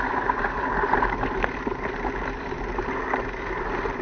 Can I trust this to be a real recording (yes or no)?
yes